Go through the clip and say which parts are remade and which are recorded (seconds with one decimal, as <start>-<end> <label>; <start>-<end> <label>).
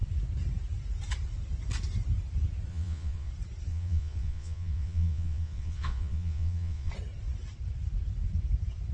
0.0-2.7 recorded; 2.7-3.3 remade; 3.3-3.7 recorded; 3.7-6.9 remade; 6.9-8.9 recorded